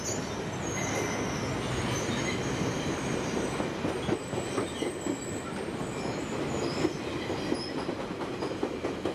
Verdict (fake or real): real